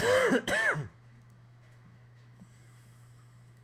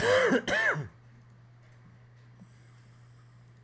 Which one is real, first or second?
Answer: second